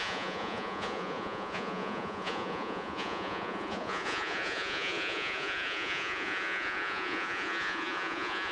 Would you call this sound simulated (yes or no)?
yes